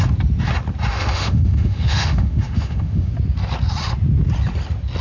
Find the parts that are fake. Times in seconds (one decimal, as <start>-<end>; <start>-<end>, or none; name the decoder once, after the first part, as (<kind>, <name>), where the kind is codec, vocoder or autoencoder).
0.9-3.1 (autoencoder, DAC-VAE)